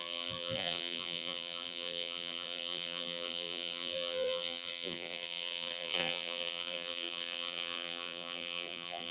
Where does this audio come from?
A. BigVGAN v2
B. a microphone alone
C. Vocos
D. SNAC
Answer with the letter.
A